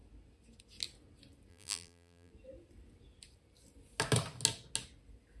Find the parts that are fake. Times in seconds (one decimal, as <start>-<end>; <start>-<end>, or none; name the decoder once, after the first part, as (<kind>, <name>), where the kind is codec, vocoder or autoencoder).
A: 1.5-2.3 (vocoder, BigVGAN v2)